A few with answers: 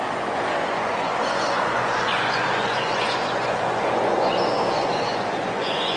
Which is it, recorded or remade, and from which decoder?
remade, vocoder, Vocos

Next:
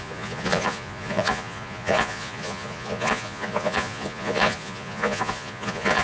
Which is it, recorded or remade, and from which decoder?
remade, vocoder, Vocos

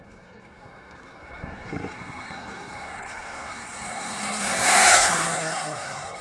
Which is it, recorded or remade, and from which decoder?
remade, codec, SNAC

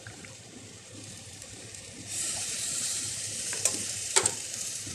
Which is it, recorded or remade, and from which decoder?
remade, vocoder, BigVGAN v2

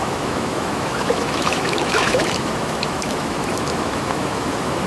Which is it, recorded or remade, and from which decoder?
remade, autoencoder, DAC-VAE